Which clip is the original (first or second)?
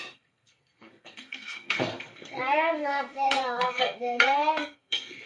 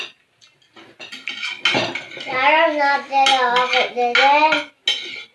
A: second